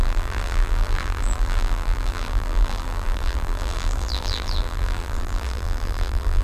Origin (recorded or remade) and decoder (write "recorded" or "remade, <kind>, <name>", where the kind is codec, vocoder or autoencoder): remade, vocoder, BigVGAN v2